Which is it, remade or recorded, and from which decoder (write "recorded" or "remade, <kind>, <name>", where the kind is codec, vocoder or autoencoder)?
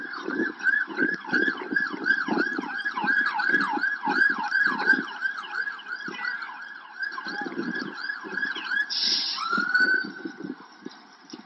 remade, vocoder, BigVGAN v2